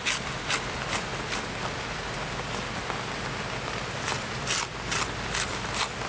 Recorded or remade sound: recorded